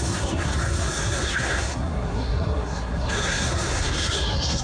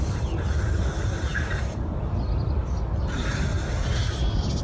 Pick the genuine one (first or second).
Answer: second